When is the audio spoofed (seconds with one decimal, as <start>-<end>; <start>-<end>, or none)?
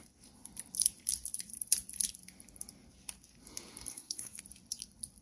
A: 3.9-4.4